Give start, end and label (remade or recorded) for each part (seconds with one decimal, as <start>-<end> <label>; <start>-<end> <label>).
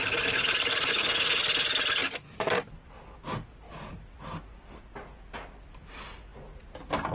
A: 0.0-0.9 recorded; 0.9-1.4 remade; 1.4-7.1 recorded